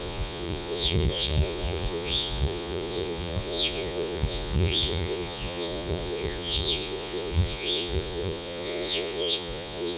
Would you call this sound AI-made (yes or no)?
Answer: yes